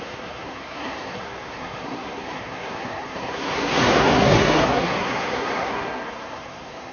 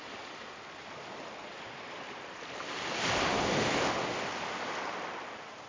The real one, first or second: second